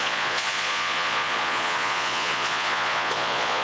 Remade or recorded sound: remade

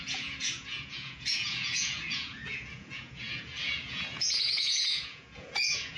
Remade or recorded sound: remade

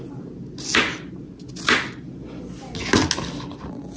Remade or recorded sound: recorded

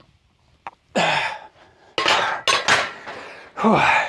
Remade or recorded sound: recorded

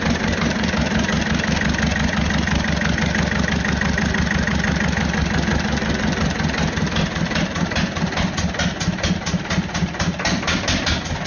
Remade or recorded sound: recorded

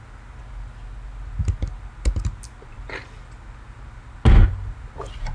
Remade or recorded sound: recorded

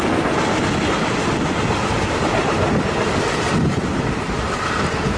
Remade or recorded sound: recorded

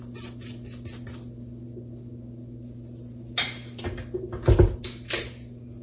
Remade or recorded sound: recorded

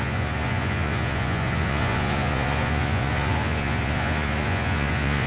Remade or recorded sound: remade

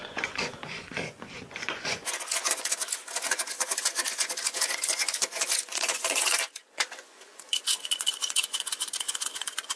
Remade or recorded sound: remade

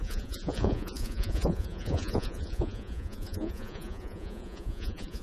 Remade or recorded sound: remade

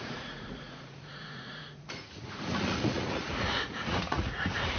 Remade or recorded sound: remade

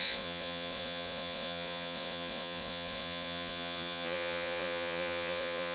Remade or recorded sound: remade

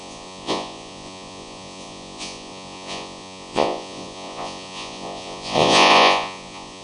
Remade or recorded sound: remade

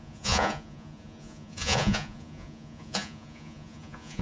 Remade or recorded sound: remade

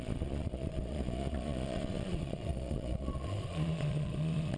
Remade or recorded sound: remade